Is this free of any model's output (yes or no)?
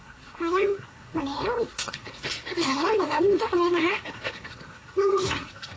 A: no